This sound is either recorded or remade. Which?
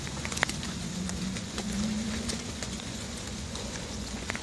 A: remade